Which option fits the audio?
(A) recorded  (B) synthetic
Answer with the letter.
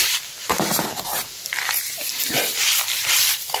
B